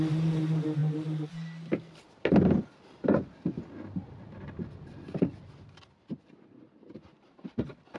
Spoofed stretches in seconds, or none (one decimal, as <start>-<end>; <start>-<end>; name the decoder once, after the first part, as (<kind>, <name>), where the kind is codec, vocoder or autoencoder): none